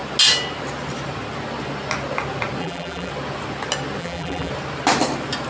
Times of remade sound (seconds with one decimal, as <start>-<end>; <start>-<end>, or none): 2.6-3.1; 4.0-4.5